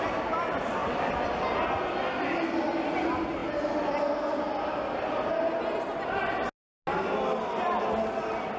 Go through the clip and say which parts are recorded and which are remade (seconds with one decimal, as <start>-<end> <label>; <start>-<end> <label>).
0.0-8.6 recorded